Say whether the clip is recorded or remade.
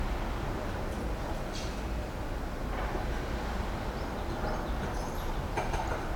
recorded